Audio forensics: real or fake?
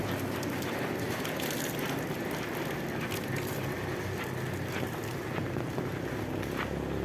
real